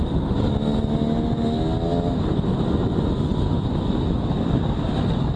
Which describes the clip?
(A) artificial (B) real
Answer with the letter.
B